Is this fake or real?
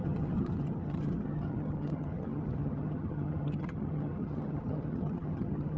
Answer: fake